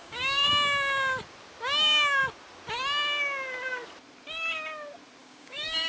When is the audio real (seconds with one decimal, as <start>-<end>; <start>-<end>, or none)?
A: 0.5-5.2